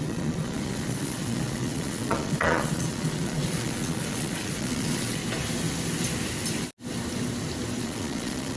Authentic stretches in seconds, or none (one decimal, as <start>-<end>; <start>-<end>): 5.2-7.8